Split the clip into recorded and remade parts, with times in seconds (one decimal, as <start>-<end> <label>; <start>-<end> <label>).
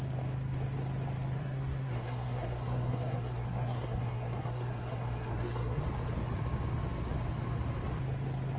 0.0-1.4 recorded; 1.4-5.8 remade; 5.8-8.6 recorded